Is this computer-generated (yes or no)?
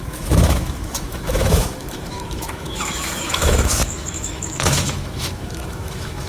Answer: yes